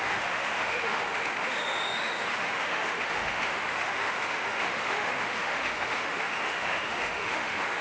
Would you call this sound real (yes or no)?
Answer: no